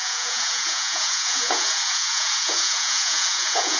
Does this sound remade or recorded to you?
remade